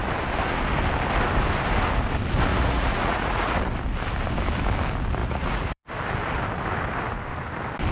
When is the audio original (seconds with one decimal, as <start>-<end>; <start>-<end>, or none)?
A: 0.0-2.5; 3.6-5.2; 5.9-7.9